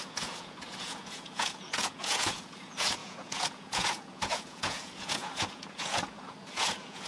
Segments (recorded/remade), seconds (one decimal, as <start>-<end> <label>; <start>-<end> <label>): 0.0-7.1 remade